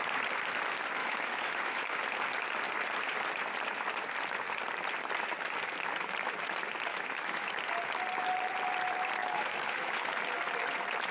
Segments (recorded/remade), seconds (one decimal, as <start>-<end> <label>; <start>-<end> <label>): 0.0-1.0 recorded; 1.0-2.0 remade; 2.0-6.9 recorded; 6.9-7.5 remade; 7.5-9.2 recorded; 9.2-10.1 remade; 10.1-11.1 recorded